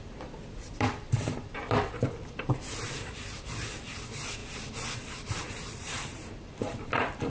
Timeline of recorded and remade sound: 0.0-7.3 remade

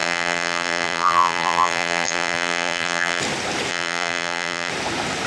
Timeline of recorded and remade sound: 0.0-3.2 remade; 3.2-3.7 recorded; 3.7-4.7 remade; 4.7-5.3 recorded

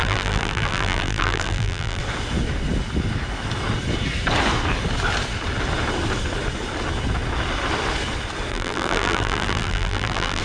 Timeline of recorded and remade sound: 0.0-2.0 remade; 2.0-8.5 recorded; 8.5-10.4 remade

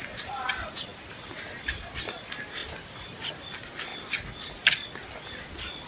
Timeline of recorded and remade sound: 0.0-0.9 recorded; 0.9-2.0 remade; 2.0-2.6 recorded; 2.6-3.3 remade; 3.3-5.9 recorded

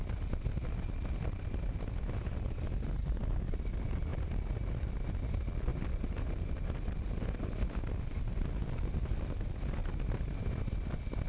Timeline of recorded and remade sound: 0.0-4.1 recorded; 4.1-4.9 remade; 4.9-5.7 recorded; 5.7-6.4 remade; 6.4-9.8 recorded; 9.8-10.4 remade; 10.4-11.3 recorded